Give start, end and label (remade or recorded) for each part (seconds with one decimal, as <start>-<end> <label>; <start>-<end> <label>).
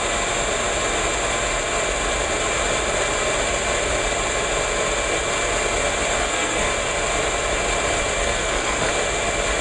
0.0-6.2 recorded; 6.2-6.7 remade; 6.7-8.2 recorded; 8.2-8.9 remade; 8.9-9.6 recorded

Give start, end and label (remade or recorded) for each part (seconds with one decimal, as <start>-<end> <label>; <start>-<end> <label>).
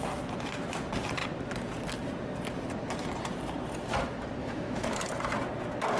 0.0-4.4 recorded; 4.4-5.0 remade; 5.0-6.0 recorded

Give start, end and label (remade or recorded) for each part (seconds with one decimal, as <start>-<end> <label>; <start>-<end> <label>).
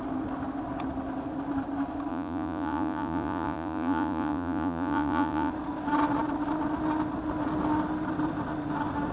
0.0-2.1 recorded; 2.1-5.5 remade; 5.5-9.1 recorded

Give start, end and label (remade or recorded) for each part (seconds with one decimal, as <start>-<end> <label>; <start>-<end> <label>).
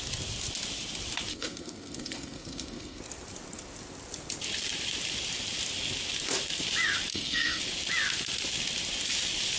0.0-1.3 recorded; 1.3-3.0 remade; 3.0-7.1 recorded; 7.1-7.6 remade; 7.6-9.6 recorded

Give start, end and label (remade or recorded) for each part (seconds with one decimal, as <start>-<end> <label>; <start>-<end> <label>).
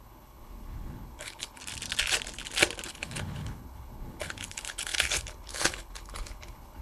0.0-1.6 remade; 1.6-2.9 recorded; 2.9-6.8 remade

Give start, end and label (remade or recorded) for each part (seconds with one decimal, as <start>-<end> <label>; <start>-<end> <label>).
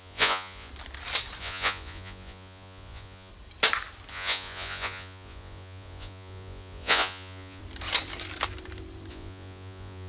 0.0-0.7 remade; 0.7-1.4 recorded; 1.4-3.3 remade; 3.3-4.1 recorded; 4.1-7.6 remade; 7.6-9.1 recorded; 9.1-10.1 remade